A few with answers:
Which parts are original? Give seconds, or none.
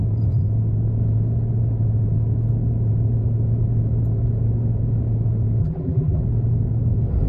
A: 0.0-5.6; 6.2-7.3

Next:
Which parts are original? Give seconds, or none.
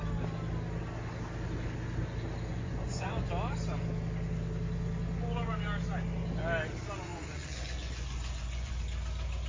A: 0.0-2.5; 3.3-7.1; 8.8-9.5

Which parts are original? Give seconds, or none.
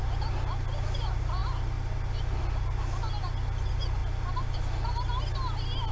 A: 0.0-5.9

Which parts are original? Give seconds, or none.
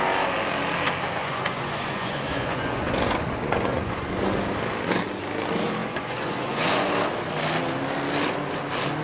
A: 0.0-1.2; 4.1-5.8; 6.9-9.0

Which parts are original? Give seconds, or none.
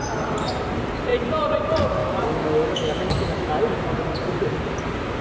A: 0.0-2.0; 3.5-5.2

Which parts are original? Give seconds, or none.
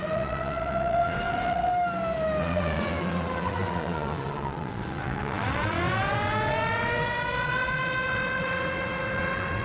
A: 1.7-2.4